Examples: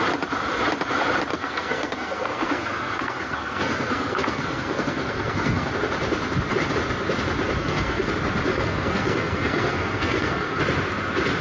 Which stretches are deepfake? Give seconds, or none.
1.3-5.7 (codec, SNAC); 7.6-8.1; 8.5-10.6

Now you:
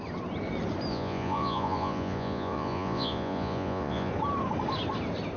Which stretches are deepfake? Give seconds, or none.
0.9-4.1 (vocoder, Vocos)

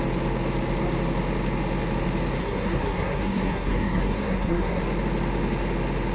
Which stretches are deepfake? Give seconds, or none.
2.4-4.8 (codec, SNAC)

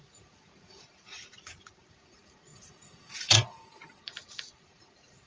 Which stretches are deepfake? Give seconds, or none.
0.0-5.3 (vocoder, Vocos)